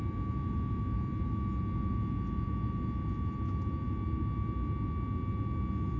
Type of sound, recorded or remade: recorded